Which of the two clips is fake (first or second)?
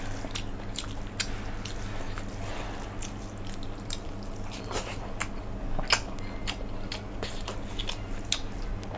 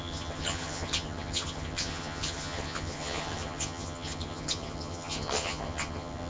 second